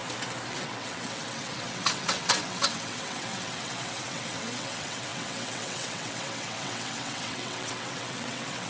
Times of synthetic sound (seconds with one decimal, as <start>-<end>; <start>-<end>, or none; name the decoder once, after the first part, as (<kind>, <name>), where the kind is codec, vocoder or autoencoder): 0.5-8.7 (vocoder, WaveNeXt)